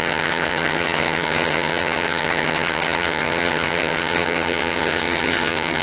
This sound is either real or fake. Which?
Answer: fake